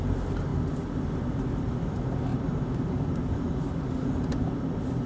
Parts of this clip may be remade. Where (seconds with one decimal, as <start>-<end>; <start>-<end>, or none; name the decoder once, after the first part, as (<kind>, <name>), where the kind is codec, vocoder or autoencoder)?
2.3-4.5 (vocoder, BigVGAN v2)